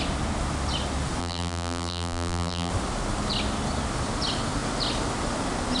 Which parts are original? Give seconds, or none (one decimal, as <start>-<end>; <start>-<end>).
0.0-1.2; 2.7-5.8

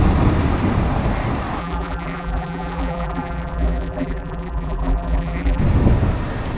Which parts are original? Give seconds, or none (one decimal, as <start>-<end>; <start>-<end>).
0.0-1.6; 5.6-6.6

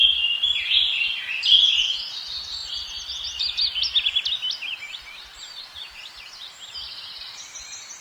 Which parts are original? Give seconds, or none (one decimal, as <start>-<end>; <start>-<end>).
0.0-5.3; 7.2-8.0

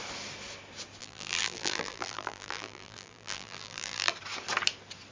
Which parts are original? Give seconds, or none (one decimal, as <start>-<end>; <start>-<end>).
0.0-1.0; 4.1-5.1

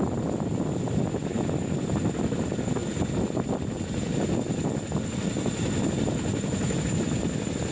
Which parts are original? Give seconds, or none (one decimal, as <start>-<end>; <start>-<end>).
0.0-7.7